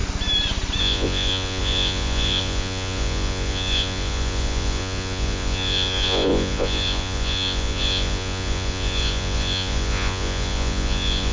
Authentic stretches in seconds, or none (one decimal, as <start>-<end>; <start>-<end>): 0.0-0.8